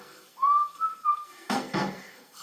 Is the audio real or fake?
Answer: fake